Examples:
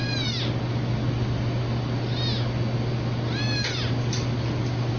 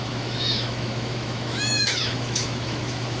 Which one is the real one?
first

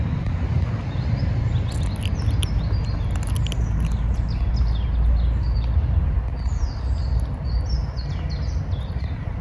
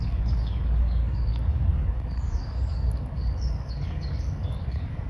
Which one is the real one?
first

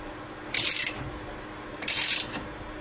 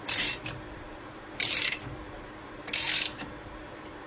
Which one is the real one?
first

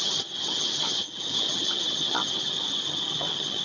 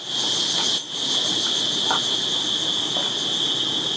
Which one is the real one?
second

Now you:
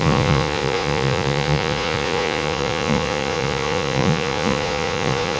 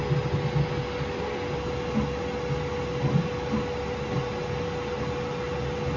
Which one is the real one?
second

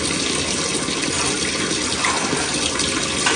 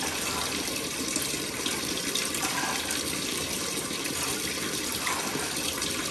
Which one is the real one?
first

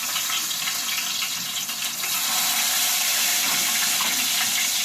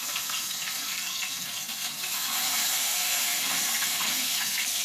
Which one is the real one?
first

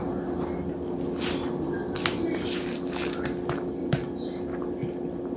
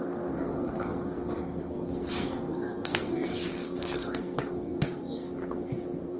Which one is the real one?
first